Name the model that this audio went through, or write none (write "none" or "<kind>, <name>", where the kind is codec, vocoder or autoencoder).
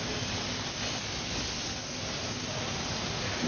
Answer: none